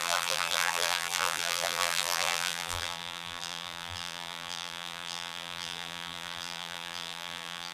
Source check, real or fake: fake